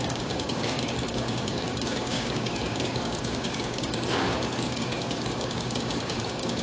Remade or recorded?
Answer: remade